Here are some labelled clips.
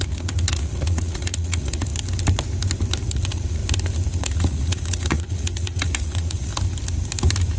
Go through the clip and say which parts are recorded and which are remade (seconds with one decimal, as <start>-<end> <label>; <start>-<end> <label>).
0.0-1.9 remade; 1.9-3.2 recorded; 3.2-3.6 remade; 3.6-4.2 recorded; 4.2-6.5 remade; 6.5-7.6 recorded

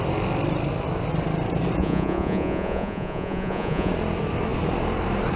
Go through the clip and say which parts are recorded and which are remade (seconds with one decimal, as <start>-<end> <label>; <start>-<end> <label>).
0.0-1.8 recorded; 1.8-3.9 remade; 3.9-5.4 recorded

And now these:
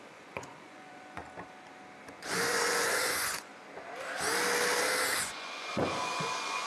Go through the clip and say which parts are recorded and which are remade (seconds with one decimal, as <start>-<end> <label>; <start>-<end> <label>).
0.0-1.2 remade; 1.2-2.1 recorded; 2.1-3.5 remade; 3.5-5.2 recorded; 5.2-6.7 remade

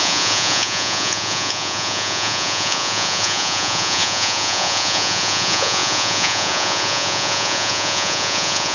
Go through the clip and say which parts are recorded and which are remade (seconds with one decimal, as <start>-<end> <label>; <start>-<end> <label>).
0.0-8.7 remade

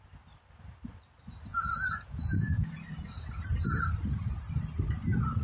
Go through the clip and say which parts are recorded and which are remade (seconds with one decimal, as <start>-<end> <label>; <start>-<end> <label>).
0.0-1.5 recorded; 1.5-2.7 remade; 2.7-5.4 recorded